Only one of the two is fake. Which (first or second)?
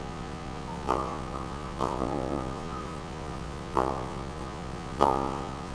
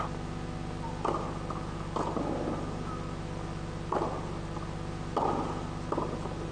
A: first